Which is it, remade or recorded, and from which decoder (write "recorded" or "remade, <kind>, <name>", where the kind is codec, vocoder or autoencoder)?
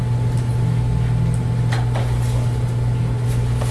recorded